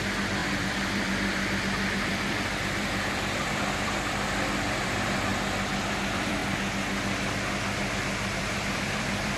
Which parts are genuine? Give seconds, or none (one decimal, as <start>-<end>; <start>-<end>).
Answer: 5.3-5.8; 6.4-8.0